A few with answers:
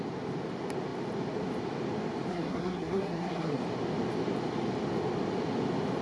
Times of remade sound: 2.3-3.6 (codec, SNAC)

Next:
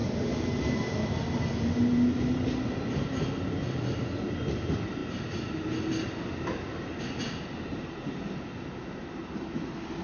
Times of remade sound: none

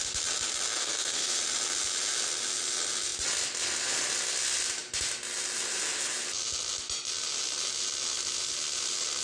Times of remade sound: 0.8-1.4 (codec, SNAC)

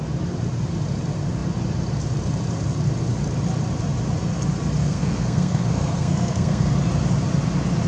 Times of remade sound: 4.8-6.7 (codec, SNAC)

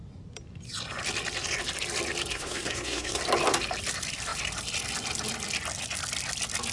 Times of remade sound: 2.3-3.2 (codec, SNAC)

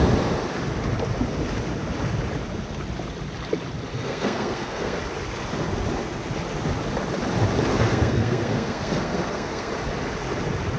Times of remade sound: 3.9-5.0 (codec, SNAC); 7.7-9.7

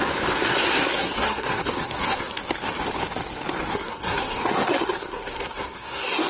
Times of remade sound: 0.7-2.4 (codec, SNAC); 3.7-6.3

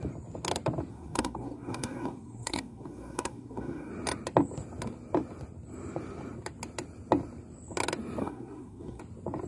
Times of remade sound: 0.9-3.9 (codec, SNAC); 8.2-9.0